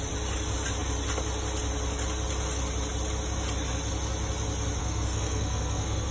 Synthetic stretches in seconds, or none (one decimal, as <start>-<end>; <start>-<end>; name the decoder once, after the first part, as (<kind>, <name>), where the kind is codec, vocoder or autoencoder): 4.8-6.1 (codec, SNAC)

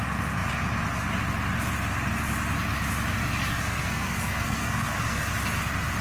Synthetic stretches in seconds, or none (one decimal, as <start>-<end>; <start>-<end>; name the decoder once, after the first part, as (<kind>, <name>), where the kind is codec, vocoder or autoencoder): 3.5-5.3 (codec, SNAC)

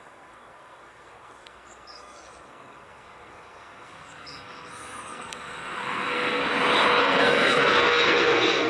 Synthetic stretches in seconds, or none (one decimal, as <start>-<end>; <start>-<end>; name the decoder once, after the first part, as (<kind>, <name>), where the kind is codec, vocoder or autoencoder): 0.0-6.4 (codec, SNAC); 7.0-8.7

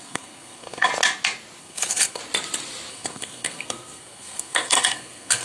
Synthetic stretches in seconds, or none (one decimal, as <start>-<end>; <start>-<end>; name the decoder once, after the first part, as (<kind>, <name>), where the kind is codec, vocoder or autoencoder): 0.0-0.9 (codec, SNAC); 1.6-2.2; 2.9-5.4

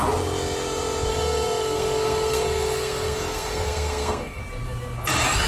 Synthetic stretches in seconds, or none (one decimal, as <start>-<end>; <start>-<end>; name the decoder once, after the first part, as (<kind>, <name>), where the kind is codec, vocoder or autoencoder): 1.1-4.4 (codec, SNAC)

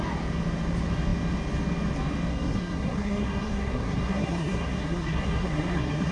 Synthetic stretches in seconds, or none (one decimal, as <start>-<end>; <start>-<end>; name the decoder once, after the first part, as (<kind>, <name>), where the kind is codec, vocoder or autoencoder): 2.3-6.1 (codec, SNAC)

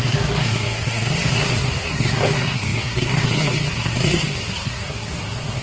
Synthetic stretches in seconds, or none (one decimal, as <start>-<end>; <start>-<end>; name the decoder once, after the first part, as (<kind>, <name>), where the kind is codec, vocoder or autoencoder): 0.0-5.6 (codec, SNAC)